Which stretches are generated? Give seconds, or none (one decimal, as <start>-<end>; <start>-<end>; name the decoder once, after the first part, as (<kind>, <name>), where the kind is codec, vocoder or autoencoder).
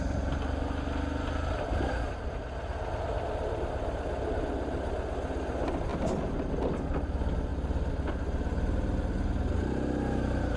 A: none